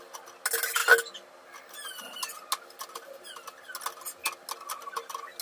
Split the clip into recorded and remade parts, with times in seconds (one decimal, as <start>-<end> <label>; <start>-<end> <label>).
0.0-5.4 recorded